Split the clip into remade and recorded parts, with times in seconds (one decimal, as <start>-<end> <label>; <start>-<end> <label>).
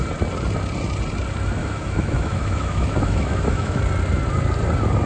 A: 0.0-1.6 recorded; 1.6-3.8 remade; 3.8-5.1 recorded